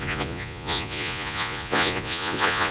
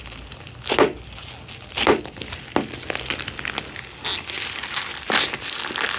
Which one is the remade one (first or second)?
first